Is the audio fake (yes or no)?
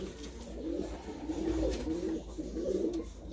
no